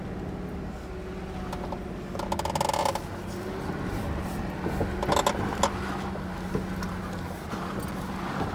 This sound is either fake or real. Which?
real